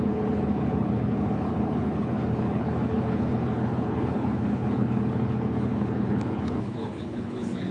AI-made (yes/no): yes